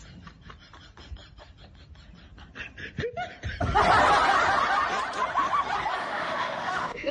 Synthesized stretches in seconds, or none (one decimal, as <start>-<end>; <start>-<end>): 6.0-7.1

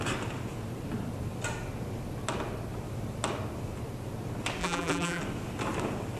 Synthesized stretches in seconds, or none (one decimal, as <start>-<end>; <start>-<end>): 4.6-5.2